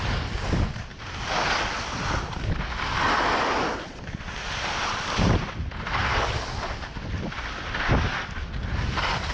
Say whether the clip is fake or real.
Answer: real